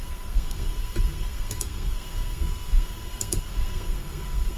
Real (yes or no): no